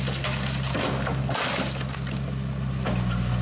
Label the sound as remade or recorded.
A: recorded